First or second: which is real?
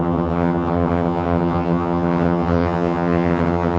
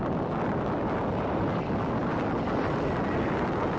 second